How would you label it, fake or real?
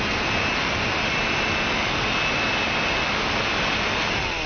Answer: real